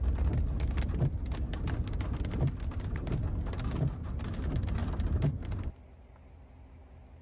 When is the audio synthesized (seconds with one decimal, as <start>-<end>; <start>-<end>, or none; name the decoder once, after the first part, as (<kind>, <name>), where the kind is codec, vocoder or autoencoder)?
4.8-5.3 (vocoder, BigVGAN v2)